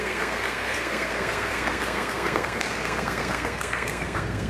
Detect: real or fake fake